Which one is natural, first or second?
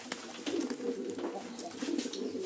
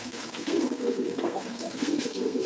first